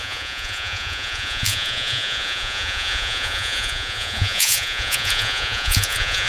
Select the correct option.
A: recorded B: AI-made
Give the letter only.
B